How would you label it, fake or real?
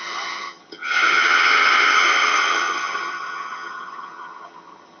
fake